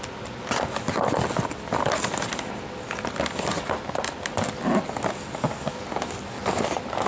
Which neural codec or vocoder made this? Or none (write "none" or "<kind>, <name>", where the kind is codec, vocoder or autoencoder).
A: none